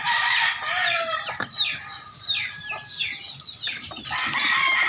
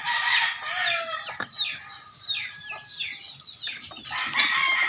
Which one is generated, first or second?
first